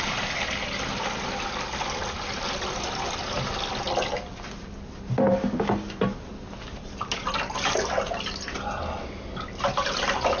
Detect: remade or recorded recorded